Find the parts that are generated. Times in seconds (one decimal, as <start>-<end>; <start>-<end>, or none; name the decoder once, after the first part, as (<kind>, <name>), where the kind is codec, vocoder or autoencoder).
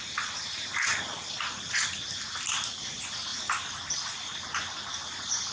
none